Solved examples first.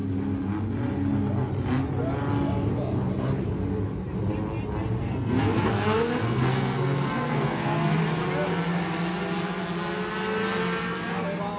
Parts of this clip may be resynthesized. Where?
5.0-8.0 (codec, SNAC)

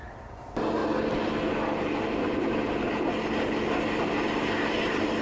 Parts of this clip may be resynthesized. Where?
none

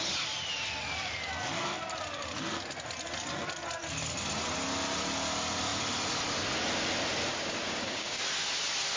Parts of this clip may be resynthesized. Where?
7.3-8.2 (codec, DAC)

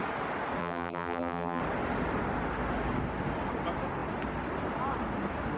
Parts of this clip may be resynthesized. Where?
0.6-1.6 (vocoder, BigVGAN v2)

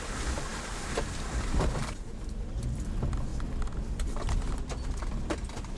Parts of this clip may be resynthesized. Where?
0.5-2.9 (vocoder, BigVGAN v2)

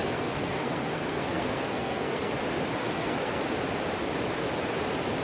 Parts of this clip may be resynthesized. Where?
0.0-2.3 (codec, SNAC); 2.8-3.4